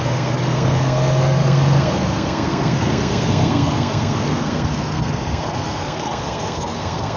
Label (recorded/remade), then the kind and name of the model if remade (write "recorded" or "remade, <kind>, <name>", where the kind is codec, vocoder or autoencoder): remade, codec, SNAC